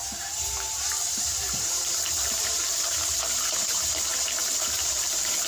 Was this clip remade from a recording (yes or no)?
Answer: yes